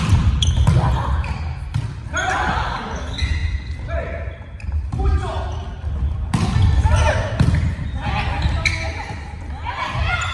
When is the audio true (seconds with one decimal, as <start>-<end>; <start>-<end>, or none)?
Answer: 0.0-10.3